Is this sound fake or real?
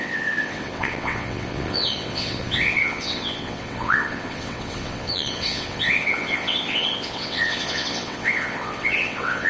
fake